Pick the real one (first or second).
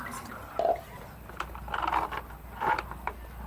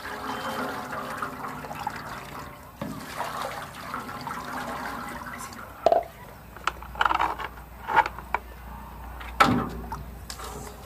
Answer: second